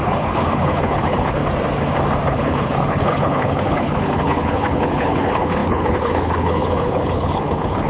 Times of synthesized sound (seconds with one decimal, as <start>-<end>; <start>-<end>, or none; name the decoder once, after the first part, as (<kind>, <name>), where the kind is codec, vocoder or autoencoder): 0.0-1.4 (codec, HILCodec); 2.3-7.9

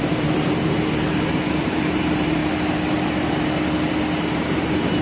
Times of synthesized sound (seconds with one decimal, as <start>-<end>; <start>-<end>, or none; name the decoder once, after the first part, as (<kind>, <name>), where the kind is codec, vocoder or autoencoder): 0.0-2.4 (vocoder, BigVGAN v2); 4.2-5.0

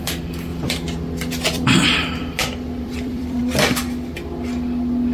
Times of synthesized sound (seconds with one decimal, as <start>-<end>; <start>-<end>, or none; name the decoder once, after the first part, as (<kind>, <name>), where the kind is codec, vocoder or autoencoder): 0.5-1.7 (vocoder, BigVGAN v2); 2.4-3.4

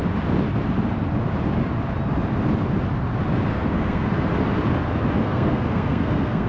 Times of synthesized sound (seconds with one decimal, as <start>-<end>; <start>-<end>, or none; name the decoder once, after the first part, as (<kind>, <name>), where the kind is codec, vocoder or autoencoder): 3.5-4.1 (codec, SNAC); 5.2-6.5

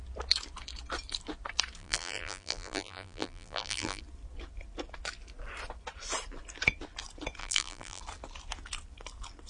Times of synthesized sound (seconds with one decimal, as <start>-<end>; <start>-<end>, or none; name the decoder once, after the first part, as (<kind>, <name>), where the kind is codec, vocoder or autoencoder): 1.8-4.0 (vocoder, BigVGAN v2); 7.4-8.0

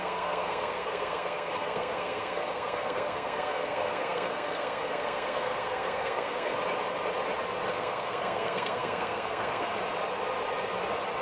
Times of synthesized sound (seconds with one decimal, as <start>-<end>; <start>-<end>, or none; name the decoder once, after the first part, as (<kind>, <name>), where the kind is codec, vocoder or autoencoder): 0.0-6.5 (codec, SNAC); 7.7-9.7